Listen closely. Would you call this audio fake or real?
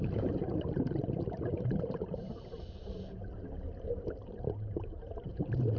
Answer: fake